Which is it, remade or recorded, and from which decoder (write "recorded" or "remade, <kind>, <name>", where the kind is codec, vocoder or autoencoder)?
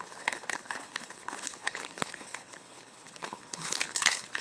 remade, codec, HILCodec